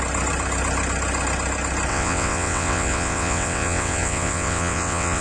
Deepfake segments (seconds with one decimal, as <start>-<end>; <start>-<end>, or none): 1.9-5.2